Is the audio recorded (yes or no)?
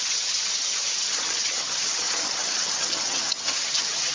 no